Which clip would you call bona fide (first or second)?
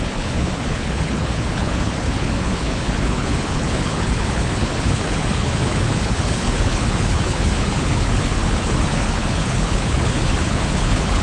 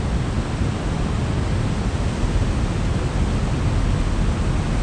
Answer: second